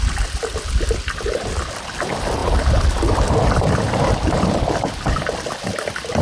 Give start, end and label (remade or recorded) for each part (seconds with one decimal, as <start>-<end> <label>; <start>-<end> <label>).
0.0-6.2 recorded